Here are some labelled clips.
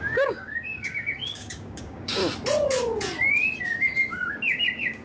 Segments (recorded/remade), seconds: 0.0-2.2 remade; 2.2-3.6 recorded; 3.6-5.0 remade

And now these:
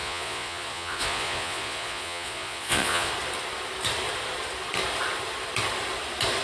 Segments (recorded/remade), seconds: 0.0-3.1 remade; 3.1-6.4 recorded

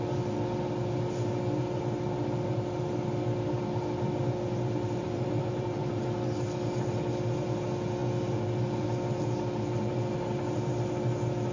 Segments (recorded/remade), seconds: 0.0-4.2 recorded; 4.2-6.0 remade; 6.0-11.5 recorded

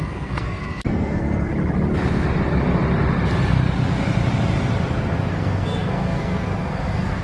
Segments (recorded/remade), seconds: 0.0-1.5 remade; 1.5-5.3 recorded; 5.3-7.2 remade